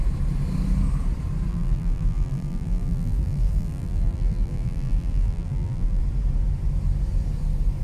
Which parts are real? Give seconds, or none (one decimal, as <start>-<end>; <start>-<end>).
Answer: 0.0-1.5; 6.0-7.8